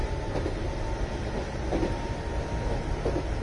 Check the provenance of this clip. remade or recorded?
recorded